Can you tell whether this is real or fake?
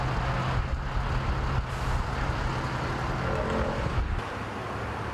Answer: real